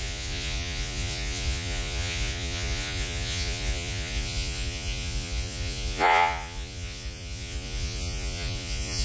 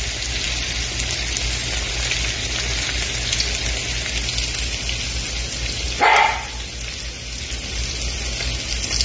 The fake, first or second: first